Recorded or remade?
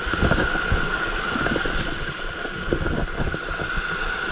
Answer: recorded